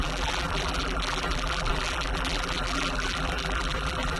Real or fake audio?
fake